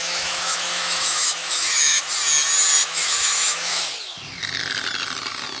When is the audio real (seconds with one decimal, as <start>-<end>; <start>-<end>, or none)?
2.0-2.8; 3.8-5.6